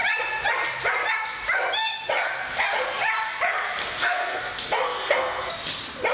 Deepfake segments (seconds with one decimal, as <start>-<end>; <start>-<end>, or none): 3.8-5.5